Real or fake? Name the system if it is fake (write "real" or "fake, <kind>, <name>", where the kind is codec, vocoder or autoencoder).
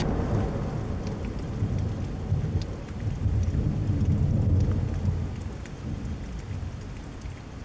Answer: real